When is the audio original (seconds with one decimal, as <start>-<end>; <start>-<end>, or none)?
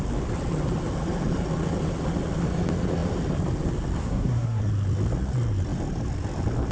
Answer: 0.0-4.0; 4.6-6.7